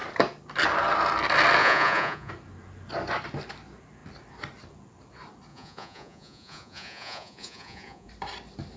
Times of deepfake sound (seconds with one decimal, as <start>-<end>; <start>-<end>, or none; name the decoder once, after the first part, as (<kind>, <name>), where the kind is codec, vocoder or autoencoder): 1.6-2.3 (vocoder, Vocos); 5.5-8.1